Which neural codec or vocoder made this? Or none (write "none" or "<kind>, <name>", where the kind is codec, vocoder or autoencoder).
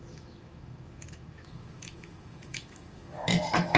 autoencoder, DAC-VAE